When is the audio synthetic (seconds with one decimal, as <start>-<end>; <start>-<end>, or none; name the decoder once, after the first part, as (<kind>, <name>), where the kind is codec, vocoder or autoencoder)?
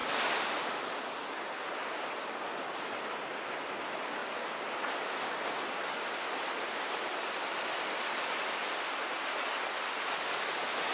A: none